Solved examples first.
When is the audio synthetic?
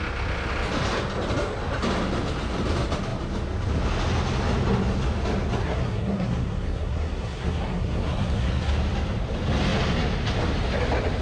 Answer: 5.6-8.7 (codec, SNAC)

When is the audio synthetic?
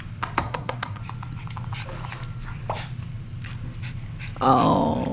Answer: 0.4-1.0 (codec, SNAC)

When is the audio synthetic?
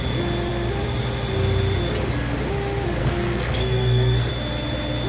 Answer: 3.0-4.3 (codec, SNAC)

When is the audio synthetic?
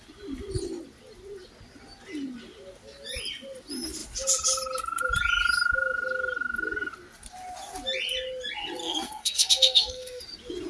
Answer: 8.8-10.2 (codec, SNAC)